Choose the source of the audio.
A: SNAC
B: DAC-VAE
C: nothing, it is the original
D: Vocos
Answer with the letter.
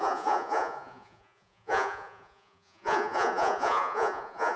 D